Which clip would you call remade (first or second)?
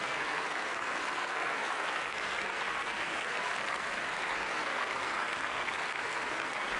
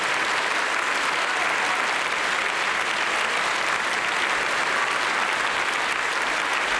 first